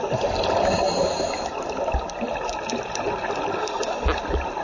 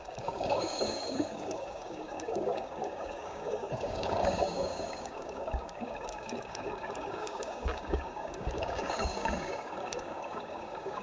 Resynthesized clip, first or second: second